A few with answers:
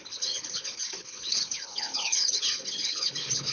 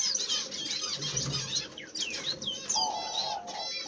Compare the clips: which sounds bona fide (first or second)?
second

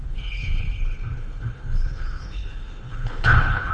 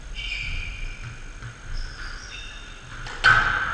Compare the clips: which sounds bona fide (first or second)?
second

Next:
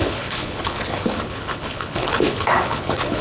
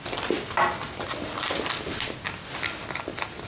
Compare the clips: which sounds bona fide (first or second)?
second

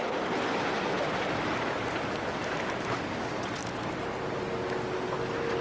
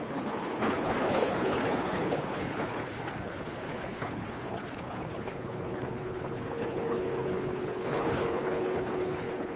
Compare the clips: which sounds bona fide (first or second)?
first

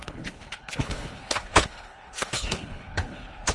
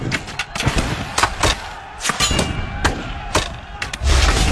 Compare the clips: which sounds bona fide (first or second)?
second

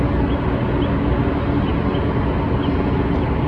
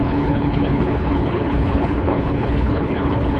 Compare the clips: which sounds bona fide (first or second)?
first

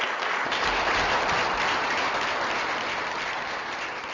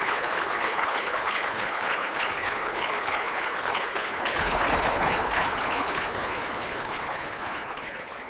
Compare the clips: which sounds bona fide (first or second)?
first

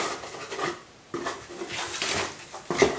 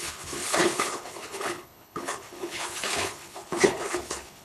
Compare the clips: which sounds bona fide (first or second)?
first